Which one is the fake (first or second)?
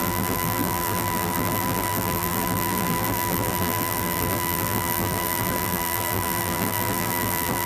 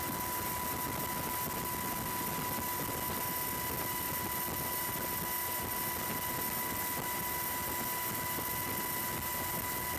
first